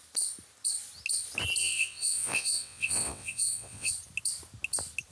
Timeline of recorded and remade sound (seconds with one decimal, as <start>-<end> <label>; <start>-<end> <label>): 0.0-1.6 recorded; 1.6-3.9 remade; 3.9-5.1 recorded